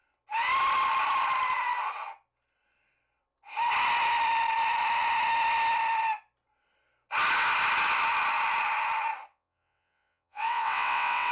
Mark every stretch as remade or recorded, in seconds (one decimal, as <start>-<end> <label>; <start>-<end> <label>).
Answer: 0.0-9.3 recorded; 9.3-11.3 remade